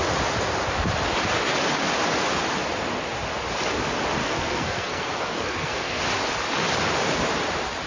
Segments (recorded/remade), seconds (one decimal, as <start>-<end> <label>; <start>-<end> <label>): 0.0-4.2 recorded; 4.2-6.0 remade; 6.0-7.9 recorded